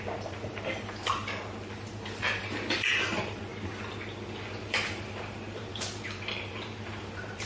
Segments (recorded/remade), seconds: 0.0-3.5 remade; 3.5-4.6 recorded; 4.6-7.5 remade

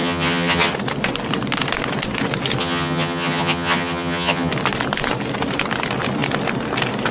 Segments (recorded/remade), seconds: 0.0-0.7 remade; 0.7-2.6 recorded; 2.6-4.5 remade; 4.5-7.1 recorded

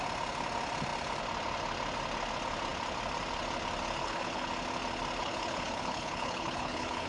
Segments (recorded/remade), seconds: 0.0-4.0 recorded; 4.0-4.5 remade; 4.5-5.2 recorded; 5.2-7.1 remade